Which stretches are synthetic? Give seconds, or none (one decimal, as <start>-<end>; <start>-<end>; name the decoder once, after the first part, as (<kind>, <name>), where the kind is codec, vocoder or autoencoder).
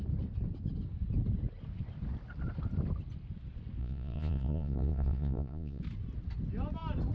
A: 3.8-5.8 (vocoder, Vocos)